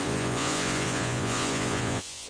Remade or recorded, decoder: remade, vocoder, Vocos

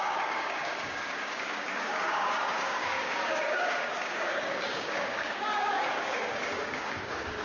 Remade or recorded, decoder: remade, codec, DAC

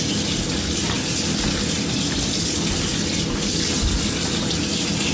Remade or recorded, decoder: recorded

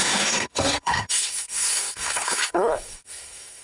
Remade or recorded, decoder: remade, codec, SNAC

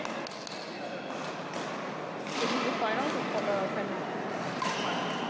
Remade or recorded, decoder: recorded